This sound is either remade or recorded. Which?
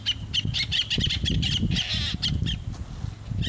recorded